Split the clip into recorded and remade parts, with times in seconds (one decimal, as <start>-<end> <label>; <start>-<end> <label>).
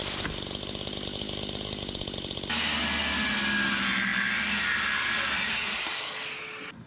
0.0-6.9 recorded